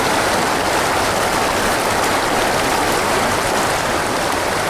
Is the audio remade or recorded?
recorded